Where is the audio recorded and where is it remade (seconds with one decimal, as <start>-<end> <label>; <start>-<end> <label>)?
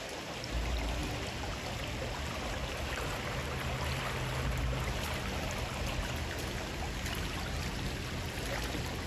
0.0-9.1 recorded